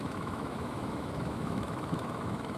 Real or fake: fake